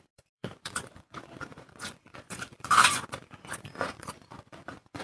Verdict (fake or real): fake